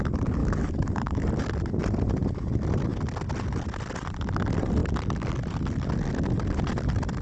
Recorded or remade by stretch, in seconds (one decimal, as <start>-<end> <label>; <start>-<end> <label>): 0.0-0.4 recorded; 0.4-1.2 remade; 1.2-7.2 recorded

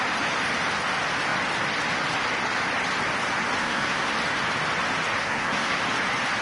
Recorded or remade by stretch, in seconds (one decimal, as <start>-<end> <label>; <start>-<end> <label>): 0.0-3.6 recorded; 3.6-4.1 remade; 4.1-5.2 recorded; 5.2-5.8 remade; 5.8-6.4 recorded

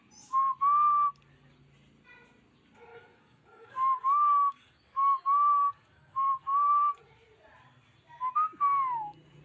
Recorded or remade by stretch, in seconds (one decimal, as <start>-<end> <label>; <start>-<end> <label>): 0.0-2.9 recorded; 2.9-7.0 remade; 7.0-9.4 recorded

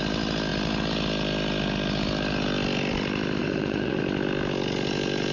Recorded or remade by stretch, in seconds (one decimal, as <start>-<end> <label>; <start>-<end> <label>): 0.0-3.4 recorded; 3.4-4.0 remade; 4.0-5.3 recorded

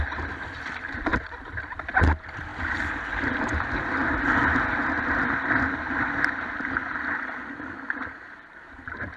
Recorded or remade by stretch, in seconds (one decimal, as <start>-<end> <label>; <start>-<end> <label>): 0.0-4.0 remade; 4.0-9.2 recorded

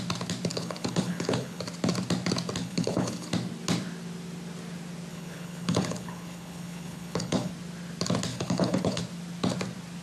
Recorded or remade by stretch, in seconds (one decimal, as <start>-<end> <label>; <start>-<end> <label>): 0.0-0.5 recorded; 0.5-1.6 remade; 1.6-2.6 recorded; 2.6-3.3 remade; 3.3-5.1 recorded; 5.1-7.5 remade; 7.5-8.3 recorded; 8.3-9.0 remade; 9.0-10.0 recorded

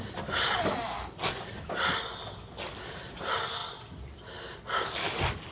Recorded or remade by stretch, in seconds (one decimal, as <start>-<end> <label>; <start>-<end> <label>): 0.0-5.5 recorded